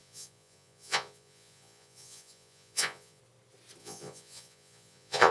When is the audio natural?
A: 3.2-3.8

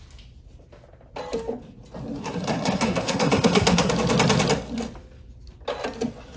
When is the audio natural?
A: 0.0-2.2; 3.9-6.4

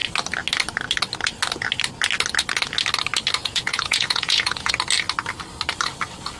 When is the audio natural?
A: 0.0-3.4; 4.7-6.4

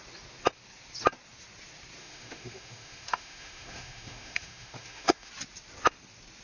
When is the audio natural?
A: 0.0-2.0; 5.3-6.4

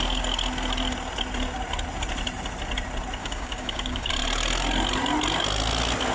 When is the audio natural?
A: 0.0-3.2; 4.1-6.1

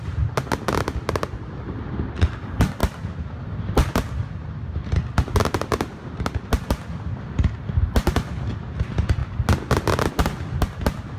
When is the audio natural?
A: 0.0-11.2

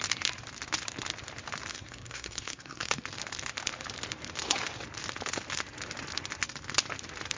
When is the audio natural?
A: 0.0-1.7; 3.0-7.4

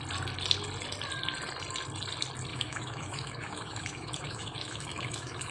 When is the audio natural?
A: 0.0-2.5